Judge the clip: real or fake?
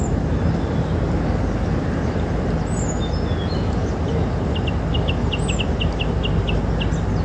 real